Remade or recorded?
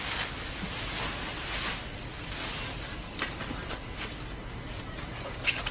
recorded